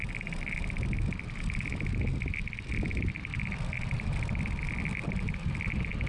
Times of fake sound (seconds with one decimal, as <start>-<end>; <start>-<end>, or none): none